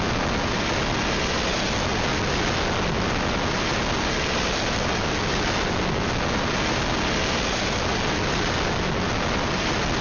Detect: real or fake real